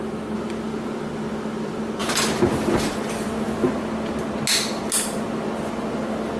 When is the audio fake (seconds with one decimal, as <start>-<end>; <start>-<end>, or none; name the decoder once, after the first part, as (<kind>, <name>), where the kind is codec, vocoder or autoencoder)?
none